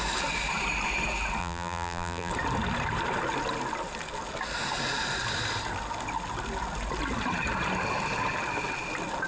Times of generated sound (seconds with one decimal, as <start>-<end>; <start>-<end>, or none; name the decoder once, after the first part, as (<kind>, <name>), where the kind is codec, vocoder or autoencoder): 1.4-2.3 (vocoder, BigVGAN v2)